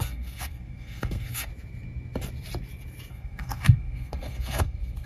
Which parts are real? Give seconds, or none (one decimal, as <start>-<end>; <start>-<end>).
1.5-3.1